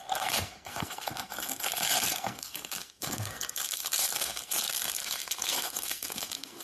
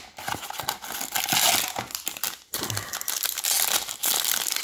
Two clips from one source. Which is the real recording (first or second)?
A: second